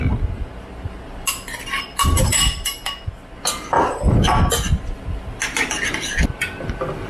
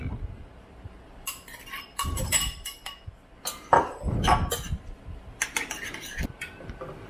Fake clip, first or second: second